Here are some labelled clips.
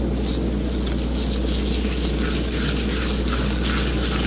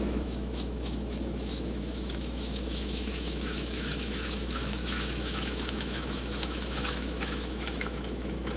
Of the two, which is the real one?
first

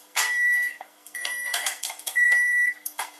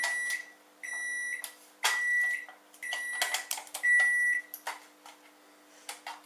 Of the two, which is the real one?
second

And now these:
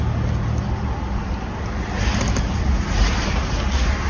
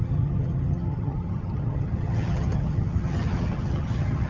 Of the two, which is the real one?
first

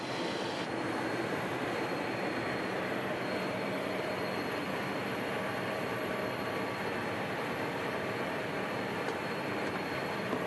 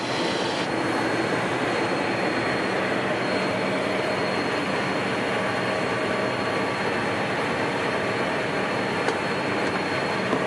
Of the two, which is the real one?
second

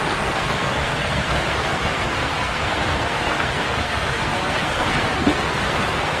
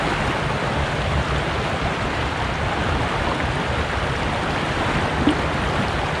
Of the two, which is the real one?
second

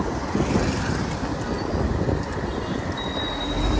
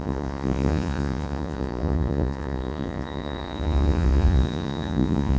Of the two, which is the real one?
first